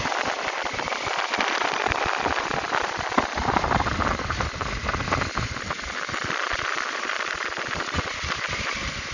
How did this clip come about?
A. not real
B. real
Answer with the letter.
B